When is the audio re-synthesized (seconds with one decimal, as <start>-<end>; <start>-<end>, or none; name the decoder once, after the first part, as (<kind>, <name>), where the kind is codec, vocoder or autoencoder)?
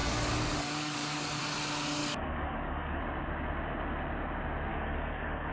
0.0-1.4 (codec, DAC); 2.0-3.0; 4.7-5.5